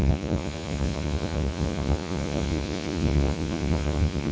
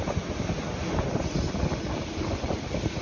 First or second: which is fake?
first